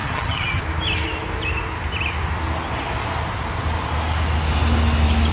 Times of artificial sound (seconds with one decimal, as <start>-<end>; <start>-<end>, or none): 0.0-0.6